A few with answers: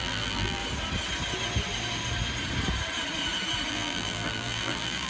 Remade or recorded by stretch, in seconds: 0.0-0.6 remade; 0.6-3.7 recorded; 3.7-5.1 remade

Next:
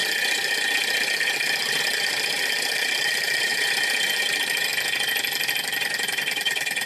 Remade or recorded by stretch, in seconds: 0.0-1.8 recorded; 1.8-3.5 remade; 3.5-4.2 recorded; 4.2-4.7 remade; 4.7-5.5 recorded; 5.5-6.9 remade

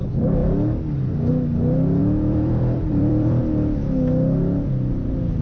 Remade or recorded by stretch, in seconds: 0.0-2.0 recorded; 2.0-3.4 remade; 3.4-5.4 recorded